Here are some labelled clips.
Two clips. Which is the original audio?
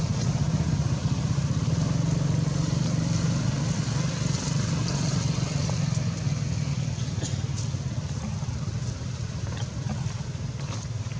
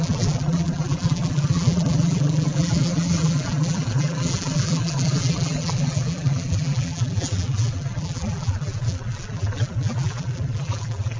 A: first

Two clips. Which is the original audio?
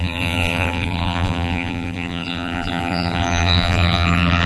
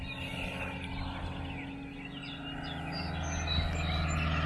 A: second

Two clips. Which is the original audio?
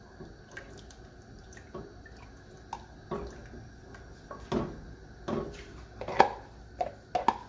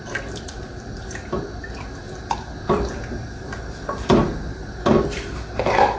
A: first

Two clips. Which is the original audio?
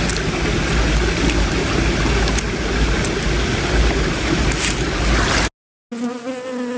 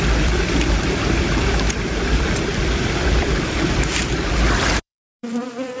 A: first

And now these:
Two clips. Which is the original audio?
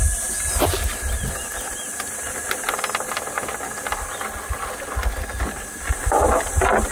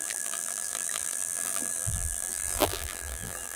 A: first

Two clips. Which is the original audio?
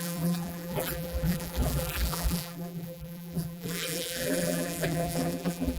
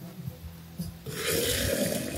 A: second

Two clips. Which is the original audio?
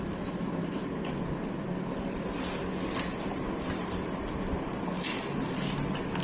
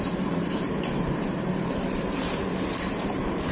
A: first